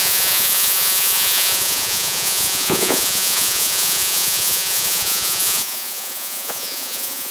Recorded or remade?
remade